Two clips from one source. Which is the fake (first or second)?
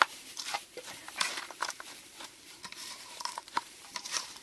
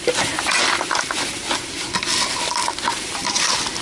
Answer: first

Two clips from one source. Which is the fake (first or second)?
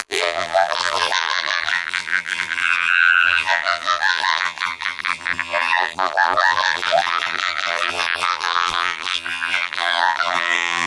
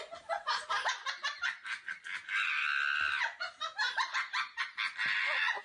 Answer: first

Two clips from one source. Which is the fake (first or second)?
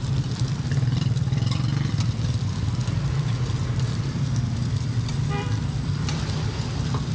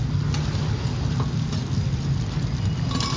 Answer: first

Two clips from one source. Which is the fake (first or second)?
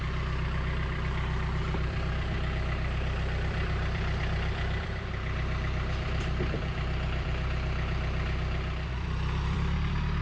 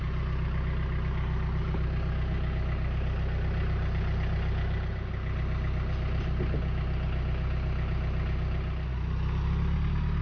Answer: first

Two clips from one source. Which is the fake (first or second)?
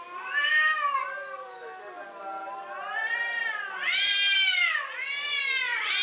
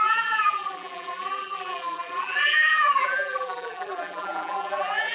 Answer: second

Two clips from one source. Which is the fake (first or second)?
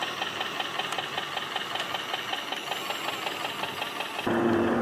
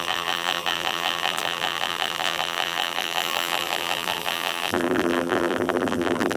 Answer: second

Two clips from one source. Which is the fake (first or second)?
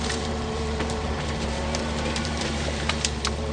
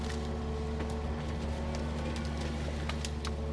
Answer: first